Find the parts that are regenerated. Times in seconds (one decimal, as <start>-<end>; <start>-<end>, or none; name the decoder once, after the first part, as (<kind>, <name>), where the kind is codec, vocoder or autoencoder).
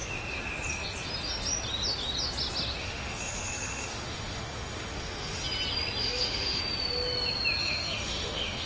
2.8-5.4 (autoencoder, DAC-VAE); 6.0-6.6; 7.6-8.7